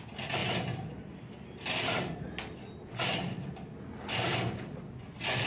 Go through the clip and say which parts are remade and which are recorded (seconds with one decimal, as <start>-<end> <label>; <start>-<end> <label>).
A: 0.0-5.5 recorded